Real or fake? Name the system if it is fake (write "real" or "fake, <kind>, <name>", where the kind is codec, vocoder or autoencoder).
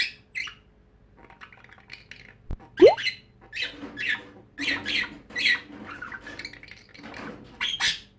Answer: real